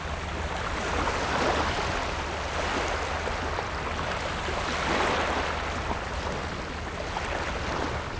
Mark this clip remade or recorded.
recorded